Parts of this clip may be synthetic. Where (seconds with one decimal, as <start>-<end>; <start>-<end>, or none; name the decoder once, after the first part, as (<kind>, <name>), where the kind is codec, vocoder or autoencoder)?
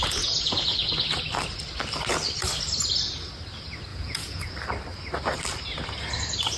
0.0-0.9 (vocoder, Vocos); 3.9-4.5